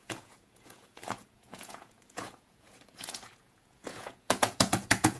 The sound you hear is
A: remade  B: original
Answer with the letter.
A